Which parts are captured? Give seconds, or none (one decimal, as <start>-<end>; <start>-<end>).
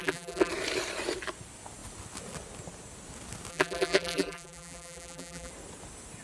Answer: 0.5-3.5; 5.5-6.2